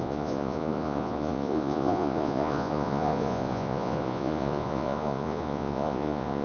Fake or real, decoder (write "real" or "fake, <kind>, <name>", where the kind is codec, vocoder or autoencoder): fake, vocoder, Vocos